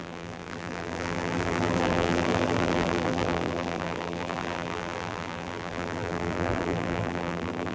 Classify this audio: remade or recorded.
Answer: remade